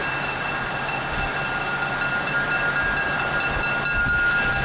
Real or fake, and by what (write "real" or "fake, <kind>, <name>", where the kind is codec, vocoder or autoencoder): real